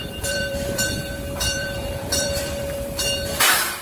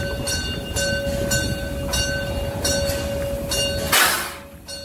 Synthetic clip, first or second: first